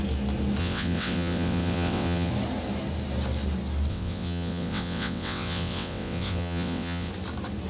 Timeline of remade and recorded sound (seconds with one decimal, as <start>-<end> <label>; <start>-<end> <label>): 0.0-0.6 recorded; 0.6-2.3 remade; 2.3-3.9 recorded; 3.9-7.1 remade; 7.1-7.7 recorded